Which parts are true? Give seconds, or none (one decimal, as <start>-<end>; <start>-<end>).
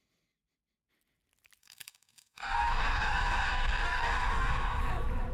0.0-1.6; 4.8-5.3